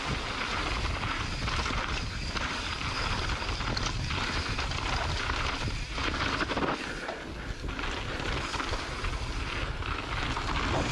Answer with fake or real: real